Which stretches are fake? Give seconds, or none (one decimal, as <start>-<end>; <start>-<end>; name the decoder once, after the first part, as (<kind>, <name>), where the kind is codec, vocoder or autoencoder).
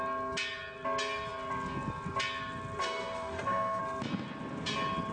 2.8-3.8 (autoencoder, DAC-VAE)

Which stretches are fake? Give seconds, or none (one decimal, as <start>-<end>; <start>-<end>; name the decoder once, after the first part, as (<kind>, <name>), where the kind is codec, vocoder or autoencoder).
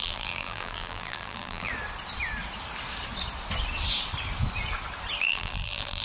0.0-1.7 (vocoder, BigVGAN v2); 5.2-6.0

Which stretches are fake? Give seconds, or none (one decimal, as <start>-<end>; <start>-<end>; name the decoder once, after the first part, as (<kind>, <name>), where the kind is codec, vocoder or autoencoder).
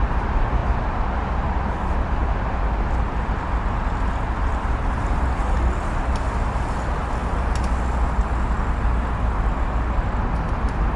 none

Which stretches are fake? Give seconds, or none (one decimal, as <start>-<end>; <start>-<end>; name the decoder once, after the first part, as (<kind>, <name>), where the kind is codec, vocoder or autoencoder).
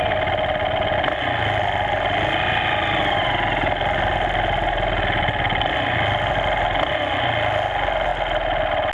none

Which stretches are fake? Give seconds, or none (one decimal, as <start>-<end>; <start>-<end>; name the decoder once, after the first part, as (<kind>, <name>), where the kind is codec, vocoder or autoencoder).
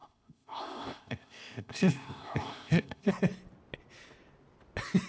0.0-3.1 (codec, ZipCodec)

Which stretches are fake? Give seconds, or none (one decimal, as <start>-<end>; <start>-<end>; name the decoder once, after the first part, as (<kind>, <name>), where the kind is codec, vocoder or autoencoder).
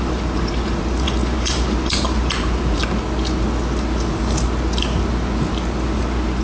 0.0-2.8 (vocoder, BigVGAN v2)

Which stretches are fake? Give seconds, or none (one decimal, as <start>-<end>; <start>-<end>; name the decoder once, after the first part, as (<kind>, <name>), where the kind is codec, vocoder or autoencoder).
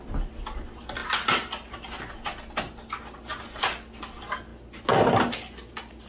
none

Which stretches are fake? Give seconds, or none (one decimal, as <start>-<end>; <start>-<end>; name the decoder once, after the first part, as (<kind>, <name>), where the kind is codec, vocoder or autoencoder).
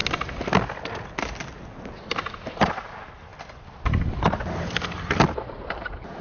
3.3-4.2 (vocoder, BigVGAN v2)